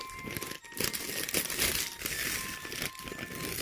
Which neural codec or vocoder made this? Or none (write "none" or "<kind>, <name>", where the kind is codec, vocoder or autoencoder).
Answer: none